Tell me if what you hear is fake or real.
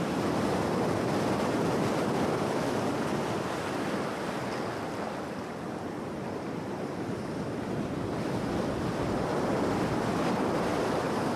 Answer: real